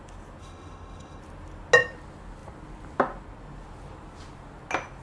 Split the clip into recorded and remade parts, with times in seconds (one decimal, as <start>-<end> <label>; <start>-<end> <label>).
0.0-0.4 recorded; 0.4-1.2 remade; 1.2-5.0 recorded